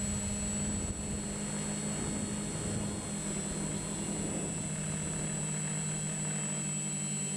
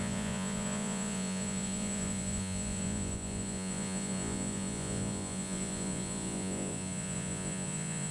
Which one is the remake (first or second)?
second